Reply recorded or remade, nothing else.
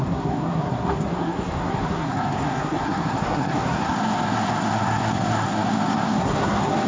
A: remade